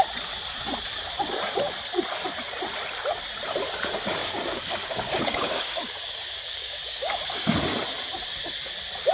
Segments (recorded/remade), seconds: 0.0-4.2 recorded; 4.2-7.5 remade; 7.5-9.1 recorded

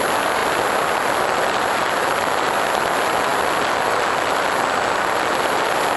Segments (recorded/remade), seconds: 0.0-6.0 recorded